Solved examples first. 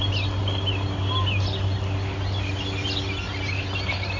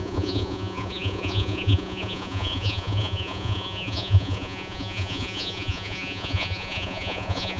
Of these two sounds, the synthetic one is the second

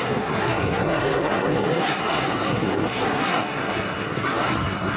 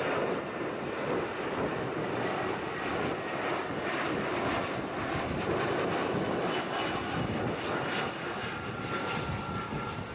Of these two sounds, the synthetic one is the first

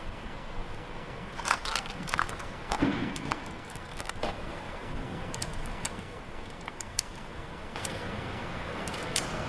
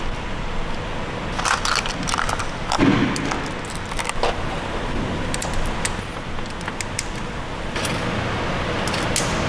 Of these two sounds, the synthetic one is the first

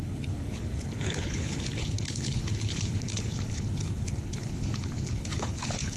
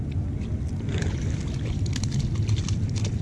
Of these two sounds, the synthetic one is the first